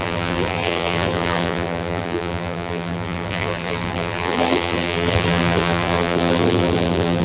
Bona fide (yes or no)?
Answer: no